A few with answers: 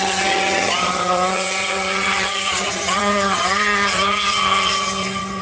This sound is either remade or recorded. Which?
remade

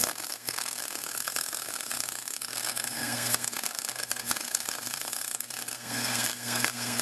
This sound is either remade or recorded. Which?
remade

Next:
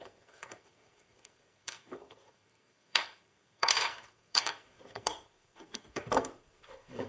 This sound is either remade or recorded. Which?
remade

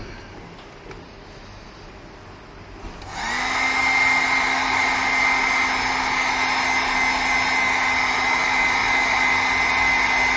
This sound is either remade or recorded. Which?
recorded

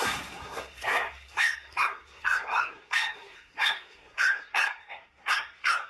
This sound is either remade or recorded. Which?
remade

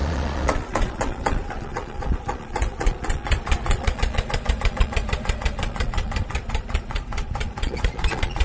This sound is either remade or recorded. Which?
remade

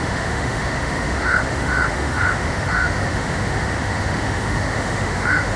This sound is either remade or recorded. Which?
remade